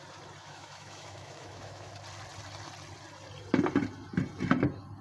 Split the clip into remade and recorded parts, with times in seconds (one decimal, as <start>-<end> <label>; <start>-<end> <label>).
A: 0.0-0.4 recorded; 0.4-1.9 remade; 1.9-5.0 recorded